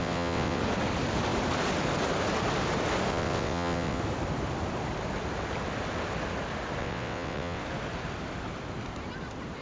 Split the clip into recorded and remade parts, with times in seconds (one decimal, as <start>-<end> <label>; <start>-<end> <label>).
0.0-0.6 remade; 0.6-3.1 recorded; 3.1-4.0 remade; 4.0-6.8 recorded; 6.8-7.6 remade; 7.6-9.6 recorded